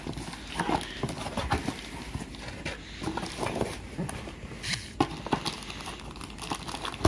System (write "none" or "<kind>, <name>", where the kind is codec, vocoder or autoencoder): none